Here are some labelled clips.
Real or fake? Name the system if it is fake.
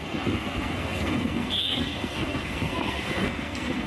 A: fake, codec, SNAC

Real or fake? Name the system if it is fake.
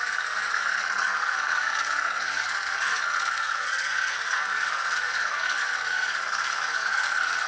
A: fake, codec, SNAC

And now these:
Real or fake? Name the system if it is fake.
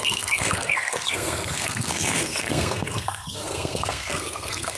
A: fake, codec, SNAC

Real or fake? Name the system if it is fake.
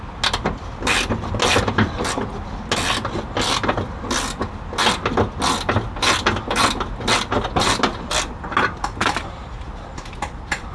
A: real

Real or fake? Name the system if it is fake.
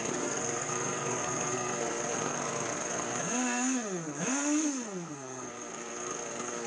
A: fake, codec, SNAC